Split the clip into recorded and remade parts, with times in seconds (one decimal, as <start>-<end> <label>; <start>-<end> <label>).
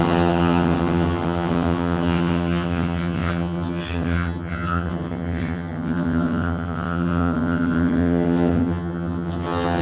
0.0-9.8 remade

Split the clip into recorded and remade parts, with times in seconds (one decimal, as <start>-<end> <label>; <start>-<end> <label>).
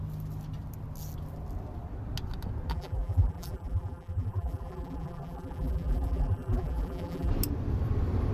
0.0-2.7 recorded; 2.7-7.3 remade; 7.3-8.3 recorded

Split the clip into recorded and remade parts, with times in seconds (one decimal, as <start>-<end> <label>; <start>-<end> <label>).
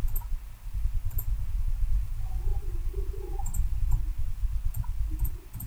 0.0-2.5 recorded; 2.5-4.0 remade; 4.0-5.7 recorded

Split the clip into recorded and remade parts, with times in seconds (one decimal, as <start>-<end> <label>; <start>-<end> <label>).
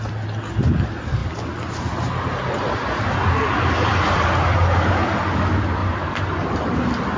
0.0-5.8 recorded; 5.8-6.8 remade; 6.8-7.2 recorded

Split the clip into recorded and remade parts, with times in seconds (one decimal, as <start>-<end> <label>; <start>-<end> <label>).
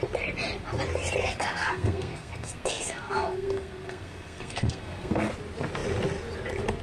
0.0-1.2 recorded; 1.2-5.3 remade; 5.3-6.8 recorded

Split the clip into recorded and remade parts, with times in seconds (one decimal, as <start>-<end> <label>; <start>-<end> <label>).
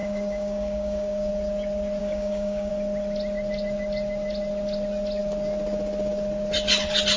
0.0-1.3 remade; 1.3-2.0 recorded; 2.0-2.7 remade; 2.7-7.2 recorded